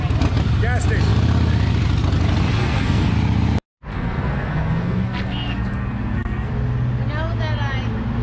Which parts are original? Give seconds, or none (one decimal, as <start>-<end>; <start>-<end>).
0.0-2.6; 3.1-3.9; 6.5-8.2